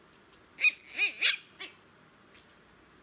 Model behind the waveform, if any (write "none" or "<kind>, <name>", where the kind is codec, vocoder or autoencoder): none